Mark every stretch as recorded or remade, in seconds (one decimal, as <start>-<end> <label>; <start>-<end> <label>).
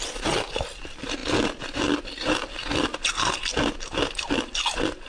0.0-5.1 recorded